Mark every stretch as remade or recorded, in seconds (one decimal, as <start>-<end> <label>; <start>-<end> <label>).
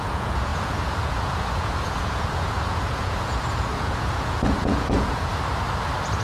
0.0-5.3 remade; 5.3-6.2 recorded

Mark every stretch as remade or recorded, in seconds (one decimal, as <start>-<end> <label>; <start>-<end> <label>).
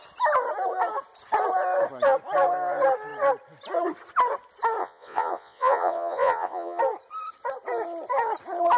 0.0-4.8 recorded; 4.8-6.8 remade; 6.8-8.8 recorded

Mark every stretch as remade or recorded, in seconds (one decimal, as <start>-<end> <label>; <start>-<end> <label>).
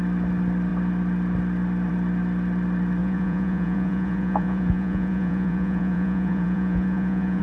0.0-3.0 recorded; 3.0-7.4 remade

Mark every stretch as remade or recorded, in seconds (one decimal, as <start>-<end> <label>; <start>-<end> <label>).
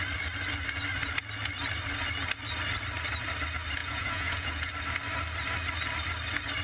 0.0-3.8 recorded; 3.8-4.7 remade; 4.7-6.6 recorded